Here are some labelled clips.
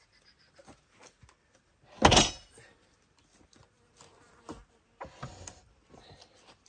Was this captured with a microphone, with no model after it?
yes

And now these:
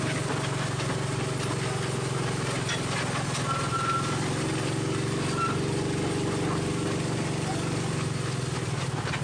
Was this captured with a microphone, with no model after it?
yes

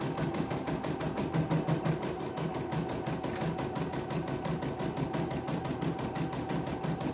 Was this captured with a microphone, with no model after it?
yes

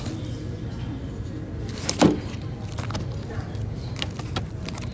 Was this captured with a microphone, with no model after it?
yes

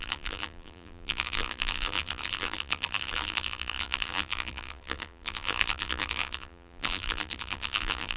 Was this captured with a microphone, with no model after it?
no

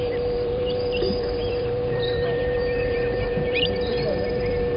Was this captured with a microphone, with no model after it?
no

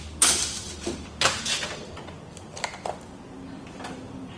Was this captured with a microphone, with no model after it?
no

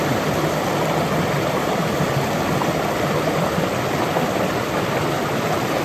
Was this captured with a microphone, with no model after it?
yes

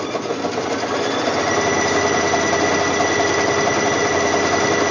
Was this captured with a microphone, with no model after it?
yes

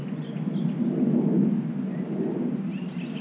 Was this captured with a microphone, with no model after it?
yes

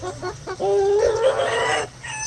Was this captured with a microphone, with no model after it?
yes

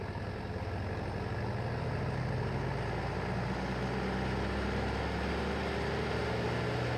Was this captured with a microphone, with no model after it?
yes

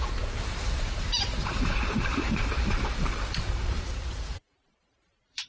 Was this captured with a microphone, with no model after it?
no